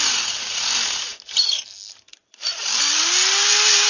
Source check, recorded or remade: recorded